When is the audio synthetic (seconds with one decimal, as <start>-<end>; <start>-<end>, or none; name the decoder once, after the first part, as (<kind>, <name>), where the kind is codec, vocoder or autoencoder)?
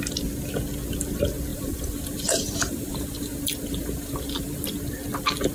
1.5-4.8 (vocoder, BigVGAN v2)